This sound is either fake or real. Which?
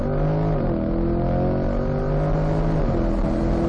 real